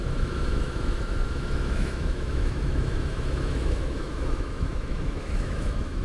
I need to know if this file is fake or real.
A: fake